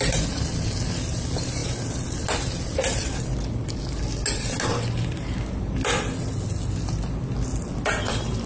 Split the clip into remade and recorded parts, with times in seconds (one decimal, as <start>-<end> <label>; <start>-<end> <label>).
0.0-8.5 recorded